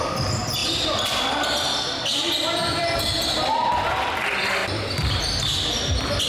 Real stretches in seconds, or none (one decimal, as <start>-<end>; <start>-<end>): 0.0-0.6; 1.3-2.6; 3.7-4.6; 5.2-6.3